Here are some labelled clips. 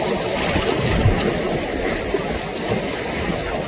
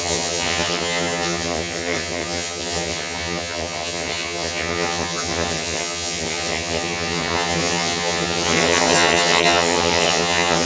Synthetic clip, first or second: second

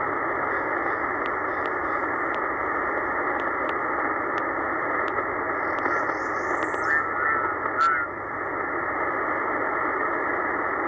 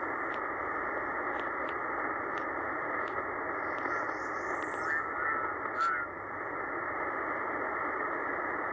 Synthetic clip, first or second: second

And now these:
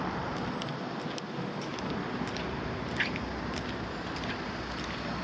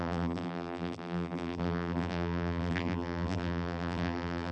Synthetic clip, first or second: second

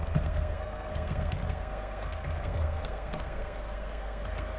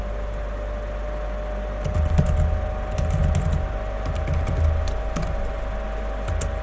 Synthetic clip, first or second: first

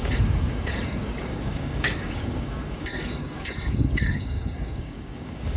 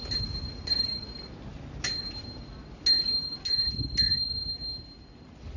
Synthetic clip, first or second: first